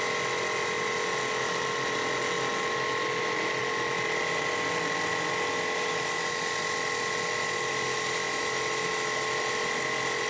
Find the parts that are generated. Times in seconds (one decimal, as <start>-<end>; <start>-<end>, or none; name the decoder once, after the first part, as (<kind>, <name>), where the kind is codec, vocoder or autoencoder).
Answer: none